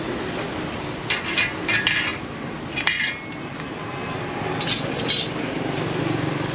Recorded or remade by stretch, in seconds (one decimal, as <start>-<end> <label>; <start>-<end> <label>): 0.0-6.5 recorded